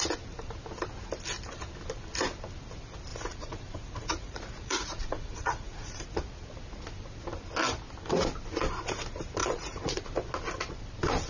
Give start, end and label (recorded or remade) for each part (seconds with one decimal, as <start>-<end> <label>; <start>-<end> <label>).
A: 0.0-3.1 recorded; 3.1-6.0 remade; 6.0-9.4 recorded; 9.4-10.0 remade; 10.0-11.3 recorded